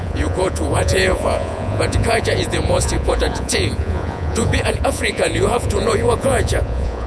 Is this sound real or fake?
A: fake